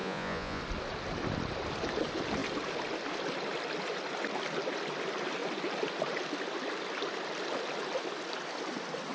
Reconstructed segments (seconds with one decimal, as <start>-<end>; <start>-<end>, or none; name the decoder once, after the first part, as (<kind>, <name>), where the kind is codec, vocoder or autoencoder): 0.0-0.6 (vocoder, Vocos)